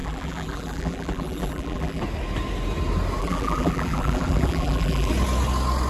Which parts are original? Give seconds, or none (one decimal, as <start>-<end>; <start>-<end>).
2.0-3.2; 5.1-5.9